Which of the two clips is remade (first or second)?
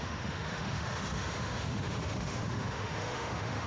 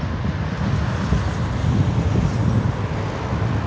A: first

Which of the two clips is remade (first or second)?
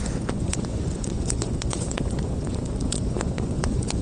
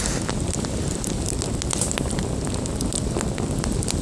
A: first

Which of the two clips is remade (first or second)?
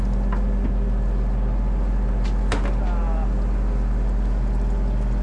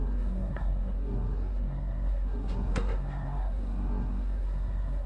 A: second